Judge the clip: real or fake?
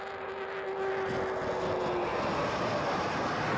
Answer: real